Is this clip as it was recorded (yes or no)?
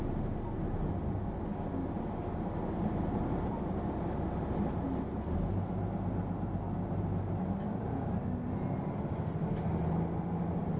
yes